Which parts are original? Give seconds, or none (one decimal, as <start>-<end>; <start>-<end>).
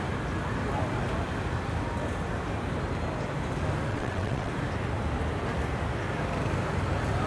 0.0-3.9; 4.5-7.3